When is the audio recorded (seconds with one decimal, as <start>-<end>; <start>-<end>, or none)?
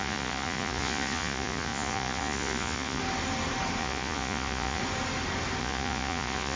3.0-3.8; 4.8-5.6